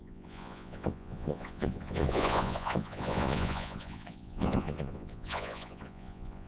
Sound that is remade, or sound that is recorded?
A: remade